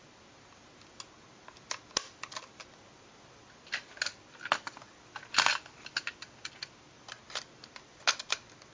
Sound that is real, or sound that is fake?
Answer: real